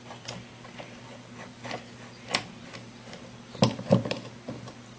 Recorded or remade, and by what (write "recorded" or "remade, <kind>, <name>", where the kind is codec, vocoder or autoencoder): recorded